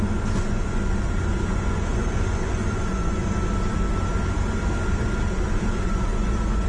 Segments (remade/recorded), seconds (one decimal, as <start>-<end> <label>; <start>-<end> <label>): 0.0-0.8 remade; 0.8-1.4 recorded; 1.4-3.2 remade; 3.2-5.7 recorded; 5.7-6.7 remade